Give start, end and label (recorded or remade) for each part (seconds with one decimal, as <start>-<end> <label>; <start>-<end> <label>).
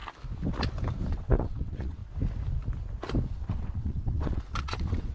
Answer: 0.0-1.1 recorded; 1.1-2.0 remade; 2.0-3.3 recorded; 3.3-5.1 remade